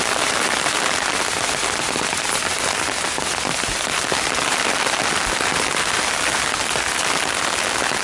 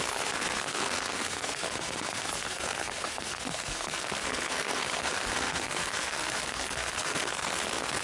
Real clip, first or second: first